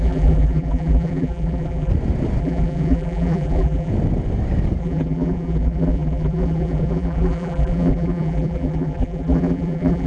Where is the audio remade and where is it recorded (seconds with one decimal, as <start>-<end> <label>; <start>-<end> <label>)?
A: 0.0-1.9 remade; 1.9-2.4 recorded; 2.4-3.9 remade; 3.9-4.8 recorded; 4.8-10.1 remade